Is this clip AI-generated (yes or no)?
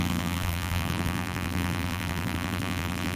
yes